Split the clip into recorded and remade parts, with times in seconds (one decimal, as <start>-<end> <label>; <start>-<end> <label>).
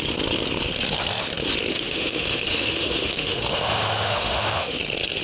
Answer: 0.0-1.7 recorded; 1.7-4.8 remade; 4.8-5.2 recorded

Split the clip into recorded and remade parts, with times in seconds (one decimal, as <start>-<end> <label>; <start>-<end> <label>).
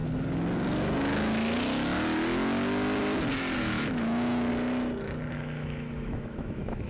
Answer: 0.0-3.6 recorded; 3.6-4.5 remade; 4.5-5.3 recorded; 5.3-6.9 remade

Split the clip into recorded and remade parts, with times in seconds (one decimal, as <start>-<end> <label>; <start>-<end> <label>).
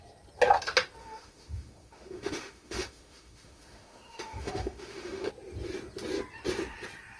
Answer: 0.0-1.0 recorded; 1.0-5.3 remade; 5.3-7.2 recorded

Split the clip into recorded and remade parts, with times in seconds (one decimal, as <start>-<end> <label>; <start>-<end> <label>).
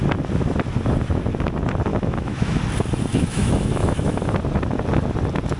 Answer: 0.0-1.9 recorded; 1.9-2.6 remade; 2.6-3.1 recorded; 3.1-4.2 remade; 4.2-5.6 recorded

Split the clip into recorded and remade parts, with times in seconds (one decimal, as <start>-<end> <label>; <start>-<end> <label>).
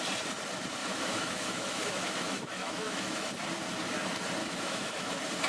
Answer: 0.0-0.8 recorded; 0.8-3.3 remade; 3.3-4.4 recorded; 4.4-5.1 remade; 5.1-5.5 recorded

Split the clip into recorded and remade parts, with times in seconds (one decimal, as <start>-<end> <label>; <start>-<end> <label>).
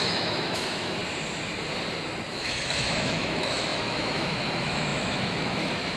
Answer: 0.0-1.0 remade; 1.0-2.3 recorded; 2.3-6.0 remade